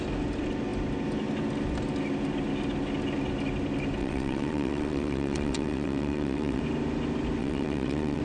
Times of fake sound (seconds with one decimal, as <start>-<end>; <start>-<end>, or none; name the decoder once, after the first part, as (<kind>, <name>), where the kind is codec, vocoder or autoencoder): 4.0-6.6 (vocoder, WaveNeXt); 7.4-8.2